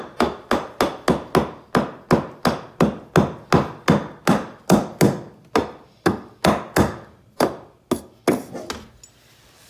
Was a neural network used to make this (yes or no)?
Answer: no